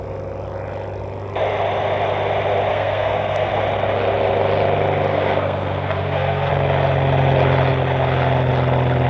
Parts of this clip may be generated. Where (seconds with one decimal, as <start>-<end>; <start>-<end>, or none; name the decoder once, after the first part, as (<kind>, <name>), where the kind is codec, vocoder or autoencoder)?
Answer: 2.7-3.5 (codec, SNAC); 5.1-6.5